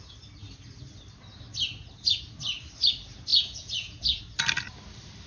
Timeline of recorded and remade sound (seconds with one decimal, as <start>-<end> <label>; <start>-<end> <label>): 0.0-3.3 recorded; 3.3-4.2 remade; 4.2-5.3 recorded